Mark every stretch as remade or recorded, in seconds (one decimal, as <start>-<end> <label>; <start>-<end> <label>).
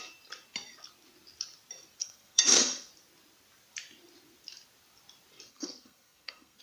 0.0-2.0 recorded; 2.0-2.9 remade; 2.9-5.5 recorded; 5.5-6.6 remade